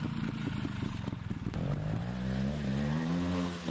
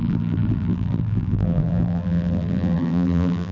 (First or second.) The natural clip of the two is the first